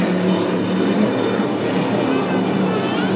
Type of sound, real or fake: real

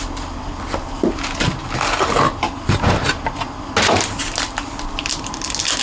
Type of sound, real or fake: real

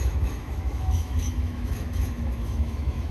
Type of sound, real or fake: fake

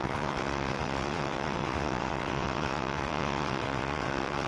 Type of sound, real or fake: fake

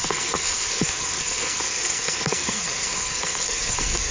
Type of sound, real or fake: fake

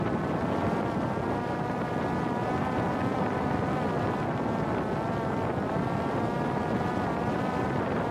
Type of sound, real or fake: real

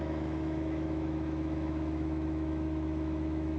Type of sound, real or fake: fake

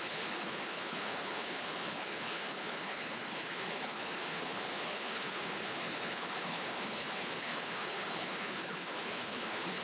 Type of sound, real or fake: fake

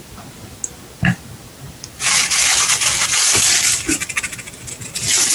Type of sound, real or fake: real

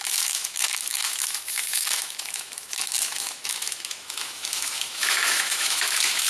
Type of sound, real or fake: fake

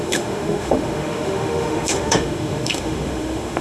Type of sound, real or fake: fake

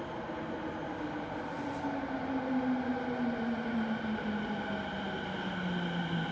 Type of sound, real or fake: real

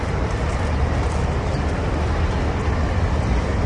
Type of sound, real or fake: real